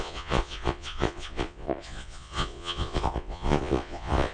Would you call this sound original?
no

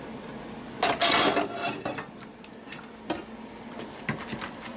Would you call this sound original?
yes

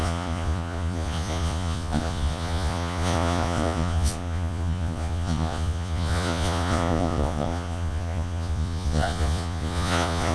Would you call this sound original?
no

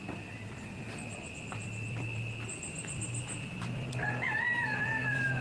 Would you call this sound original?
yes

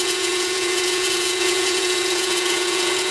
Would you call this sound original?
no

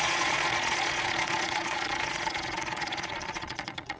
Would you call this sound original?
no